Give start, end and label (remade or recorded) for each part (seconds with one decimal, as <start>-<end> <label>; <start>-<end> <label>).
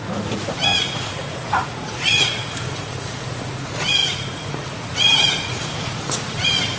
0.0-6.8 remade